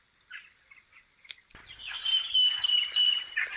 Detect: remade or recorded recorded